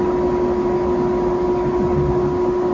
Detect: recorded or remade recorded